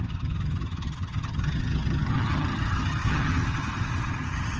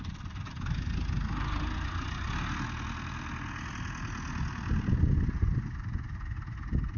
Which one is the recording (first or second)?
second